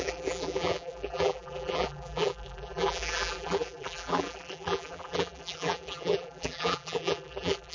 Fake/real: fake